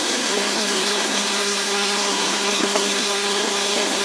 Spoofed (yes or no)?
yes